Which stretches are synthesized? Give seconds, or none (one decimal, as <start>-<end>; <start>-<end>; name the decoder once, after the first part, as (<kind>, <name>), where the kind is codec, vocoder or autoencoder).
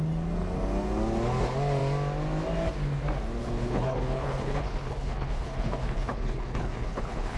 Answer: 3.4-7.4 (codec, HILCodec)